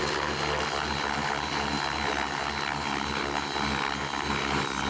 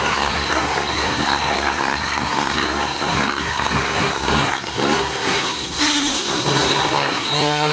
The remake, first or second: second